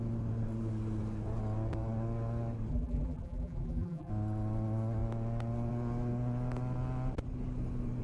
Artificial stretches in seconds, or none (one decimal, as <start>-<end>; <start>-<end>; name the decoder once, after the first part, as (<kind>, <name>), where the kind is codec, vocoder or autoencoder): 2.7-4.1 (vocoder, BigVGAN v2)